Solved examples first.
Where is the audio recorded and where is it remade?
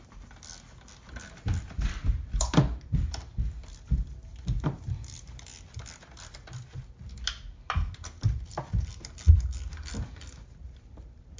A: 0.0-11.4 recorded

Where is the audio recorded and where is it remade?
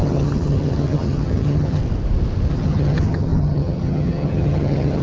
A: 0.0-1.8 remade; 1.8-2.5 recorded; 2.5-5.0 remade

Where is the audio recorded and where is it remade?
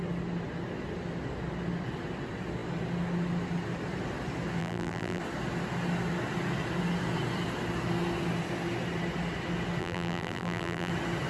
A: 0.0-4.6 recorded; 4.6-5.2 remade; 5.2-9.8 recorded; 9.8-10.9 remade; 10.9-11.3 recorded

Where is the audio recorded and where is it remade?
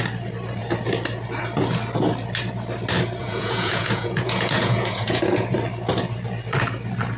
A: 0.0-3.2 recorded; 3.2-5.5 remade; 5.5-7.2 recorded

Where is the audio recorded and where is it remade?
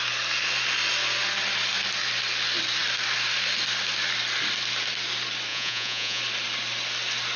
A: 0.0-5.5 recorded; 5.5-6.2 remade; 6.2-7.4 recorded